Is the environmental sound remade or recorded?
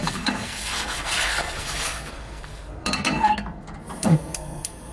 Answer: remade